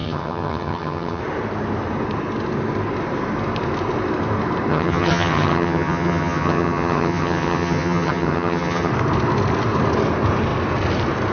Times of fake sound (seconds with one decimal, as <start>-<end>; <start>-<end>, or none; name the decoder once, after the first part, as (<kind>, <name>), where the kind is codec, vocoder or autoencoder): 0.0-1.2 (vocoder, HiFi-GAN); 4.7-8.9